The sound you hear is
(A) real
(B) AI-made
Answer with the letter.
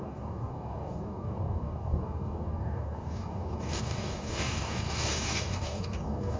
B